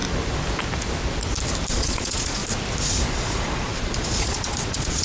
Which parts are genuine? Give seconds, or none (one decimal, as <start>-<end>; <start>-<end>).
0.0-1.7; 2.4-3.1